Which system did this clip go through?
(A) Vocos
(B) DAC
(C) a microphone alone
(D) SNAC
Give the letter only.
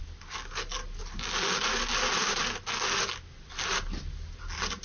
C